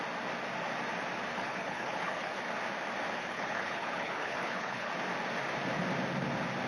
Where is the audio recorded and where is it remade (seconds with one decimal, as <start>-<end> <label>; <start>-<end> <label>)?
0.0-1.3 recorded; 1.3-2.4 remade; 2.4-3.2 recorded; 3.2-4.9 remade; 4.9-6.7 recorded